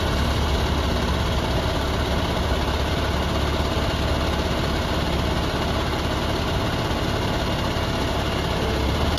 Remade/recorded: recorded